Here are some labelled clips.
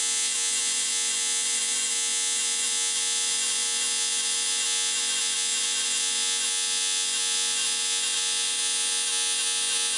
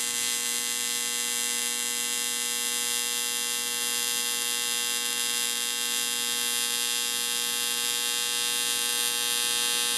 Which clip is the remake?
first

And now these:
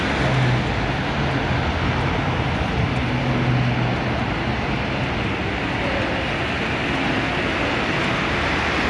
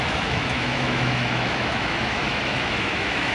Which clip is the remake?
second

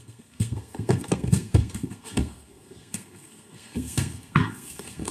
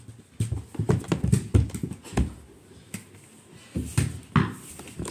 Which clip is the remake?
first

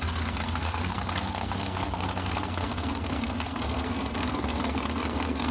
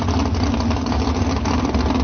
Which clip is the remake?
first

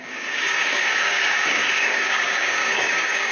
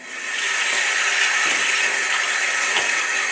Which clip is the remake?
first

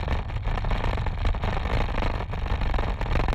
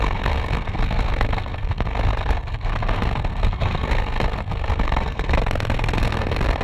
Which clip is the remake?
second